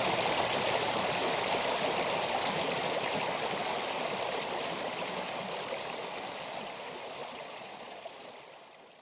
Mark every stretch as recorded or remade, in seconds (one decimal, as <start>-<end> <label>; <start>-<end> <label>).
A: 0.0-7.2 recorded; 7.2-8.1 remade; 8.1-9.0 recorded